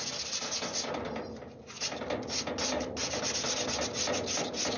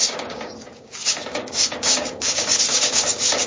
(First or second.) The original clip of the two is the first